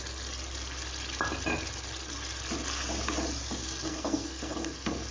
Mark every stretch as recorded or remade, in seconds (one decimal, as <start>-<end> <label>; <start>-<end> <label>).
0.0-3.6 recorded; 3.6-5.1 remade